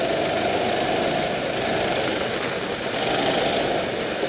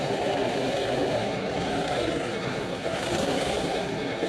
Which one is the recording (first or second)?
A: first